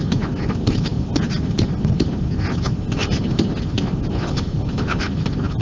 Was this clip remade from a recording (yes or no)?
no